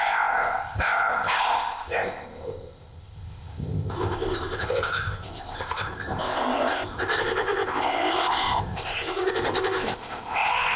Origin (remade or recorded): remade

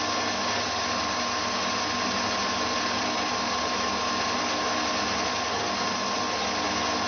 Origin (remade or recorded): recorded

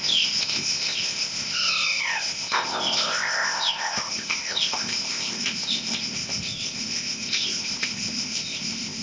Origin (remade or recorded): remade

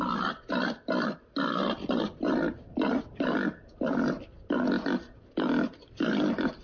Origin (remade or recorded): recorded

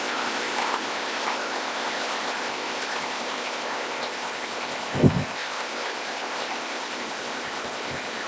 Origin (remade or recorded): remade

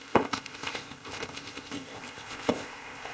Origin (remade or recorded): remade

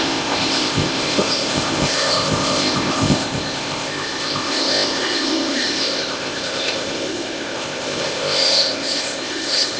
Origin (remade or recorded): remade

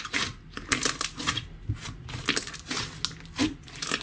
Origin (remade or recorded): recorded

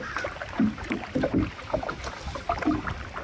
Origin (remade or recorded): recorded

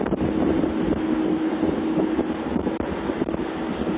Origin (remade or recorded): recorded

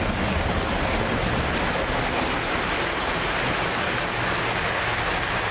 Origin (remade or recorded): recorded